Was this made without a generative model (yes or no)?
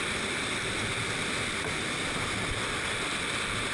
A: yes